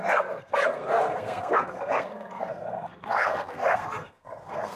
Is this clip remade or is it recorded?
remade